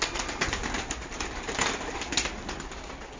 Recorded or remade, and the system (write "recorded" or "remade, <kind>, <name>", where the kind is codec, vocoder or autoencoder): recorded